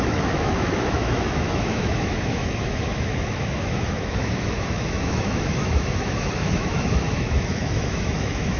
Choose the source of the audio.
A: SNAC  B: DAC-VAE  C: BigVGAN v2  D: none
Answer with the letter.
B